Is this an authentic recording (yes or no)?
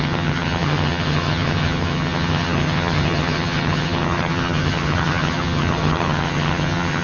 no